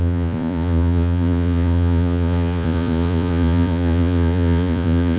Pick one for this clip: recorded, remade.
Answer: remade